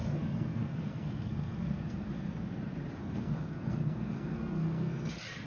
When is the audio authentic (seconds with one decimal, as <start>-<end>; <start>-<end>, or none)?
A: 2.6-3.0; 5.1-5.5